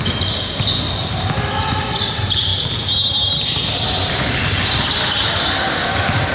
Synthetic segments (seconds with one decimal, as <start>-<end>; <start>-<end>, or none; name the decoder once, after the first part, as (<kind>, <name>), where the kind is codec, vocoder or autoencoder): none